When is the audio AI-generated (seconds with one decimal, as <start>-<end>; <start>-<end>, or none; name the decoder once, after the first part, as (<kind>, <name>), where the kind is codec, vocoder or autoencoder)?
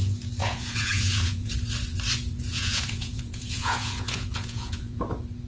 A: 0.4-1.5 (vocoder, Vocos); 2.5-5.0